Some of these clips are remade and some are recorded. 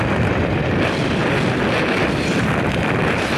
remade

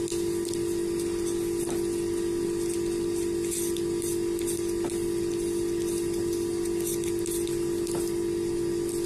recorded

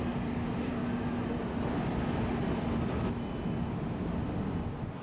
recorded